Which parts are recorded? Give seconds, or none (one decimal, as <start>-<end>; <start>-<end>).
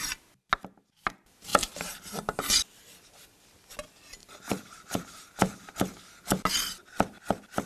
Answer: 0.0-1.5; 2.5-4.2; 5.7-7.7